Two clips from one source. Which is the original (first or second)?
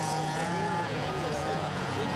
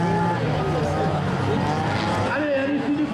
second